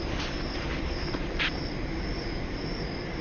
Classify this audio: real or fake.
fake